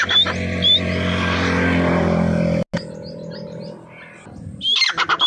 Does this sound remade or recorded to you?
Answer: recorded